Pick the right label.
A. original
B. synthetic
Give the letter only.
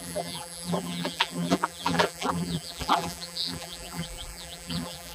B